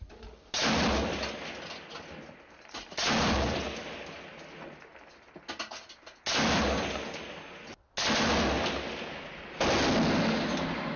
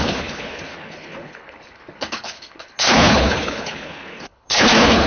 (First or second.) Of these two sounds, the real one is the first